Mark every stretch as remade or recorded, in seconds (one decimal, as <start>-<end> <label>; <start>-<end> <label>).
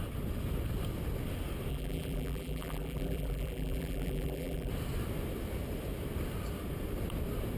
0.0-1.7 recorded; 1.7-4.7 remade; 4.7-7.6 recorded